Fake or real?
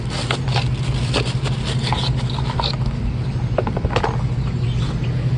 real